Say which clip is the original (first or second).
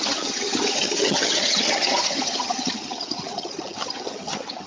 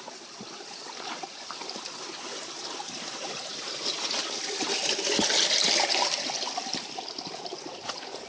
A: second